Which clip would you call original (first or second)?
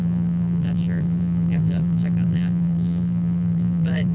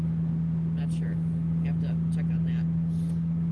second